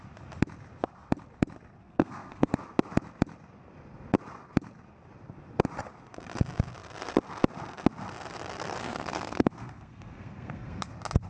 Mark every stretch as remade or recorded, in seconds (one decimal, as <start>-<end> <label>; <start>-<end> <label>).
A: 0.0-1.8 recorded; 1.8-2.5 remade; 2.5-8.8 recorded; 8.8-10.9 remade; 10.9-11.3 recorded